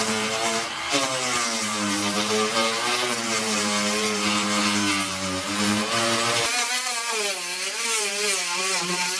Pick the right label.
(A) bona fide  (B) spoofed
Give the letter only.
B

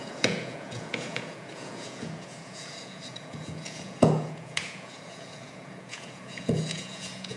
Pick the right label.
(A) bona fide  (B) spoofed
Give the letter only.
B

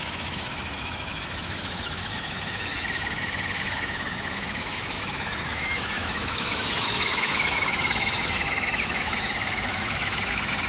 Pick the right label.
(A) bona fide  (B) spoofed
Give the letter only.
B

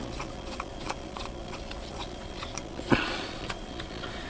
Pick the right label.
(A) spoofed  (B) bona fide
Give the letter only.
A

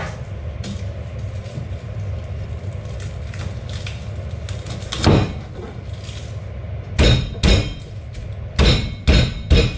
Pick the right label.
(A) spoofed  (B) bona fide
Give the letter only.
B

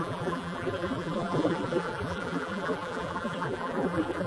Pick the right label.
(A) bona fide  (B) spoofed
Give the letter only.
B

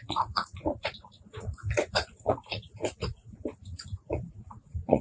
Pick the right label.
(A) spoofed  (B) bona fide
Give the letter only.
A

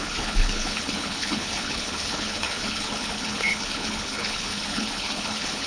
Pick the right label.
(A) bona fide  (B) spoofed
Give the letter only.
B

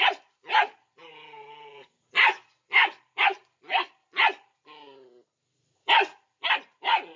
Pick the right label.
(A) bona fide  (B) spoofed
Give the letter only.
B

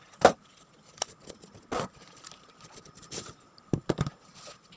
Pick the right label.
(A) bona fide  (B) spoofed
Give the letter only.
A